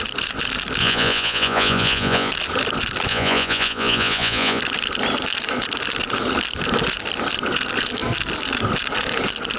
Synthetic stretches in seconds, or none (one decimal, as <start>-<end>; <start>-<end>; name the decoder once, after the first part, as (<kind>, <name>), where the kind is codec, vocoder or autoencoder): 0.8-2.3 (vocoder, Vocos); 3.1-4.6